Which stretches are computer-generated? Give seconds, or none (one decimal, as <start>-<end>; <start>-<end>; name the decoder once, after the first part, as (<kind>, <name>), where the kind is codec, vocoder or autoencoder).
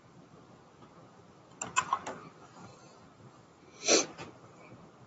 1.0-1.8 (vocoder, BigVGAN v2)